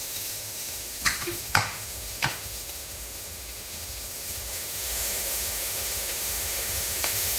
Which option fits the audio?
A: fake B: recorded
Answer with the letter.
A